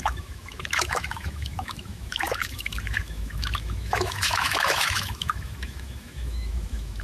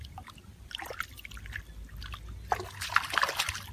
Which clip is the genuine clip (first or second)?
second